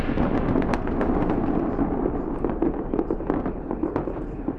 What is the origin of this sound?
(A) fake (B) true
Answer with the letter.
B